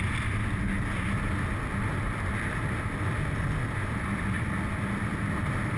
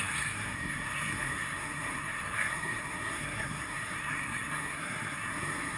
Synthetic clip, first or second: second